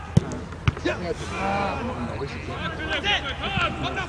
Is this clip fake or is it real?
real